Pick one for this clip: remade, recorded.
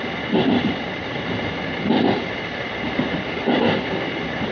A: remade